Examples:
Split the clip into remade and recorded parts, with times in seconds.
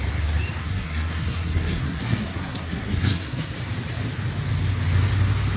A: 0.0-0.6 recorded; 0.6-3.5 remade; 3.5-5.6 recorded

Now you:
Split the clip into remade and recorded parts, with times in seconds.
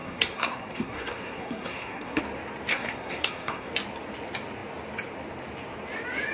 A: 0.0-2.2 remade; 2.2-2.7 recorded; 2.7-3.7 remade; 3.7-6.3 recorded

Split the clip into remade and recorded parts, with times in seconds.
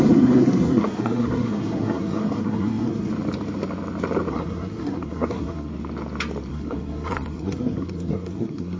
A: 0.0-3.1 remade; 3.1-4.3 recorded; 4.3-5.7 remade; 5.7-6.5 recorded; 6.5-8.8 remade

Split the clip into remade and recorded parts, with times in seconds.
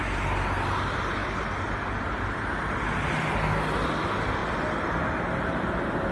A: 0.0-6.1 recorded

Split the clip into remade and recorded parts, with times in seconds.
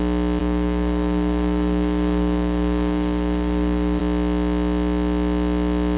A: 0.0-0.4 recorded; 0.4-4.0 remade; 4.0-6.0 recorded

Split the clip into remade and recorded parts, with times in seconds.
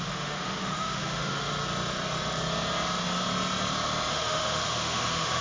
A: 0.0-1.5 remade; 1.5-4.1 recorded; 4.1-5.4 remade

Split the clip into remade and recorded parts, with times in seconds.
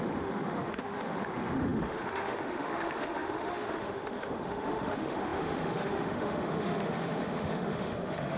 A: 0.0-8.4 remade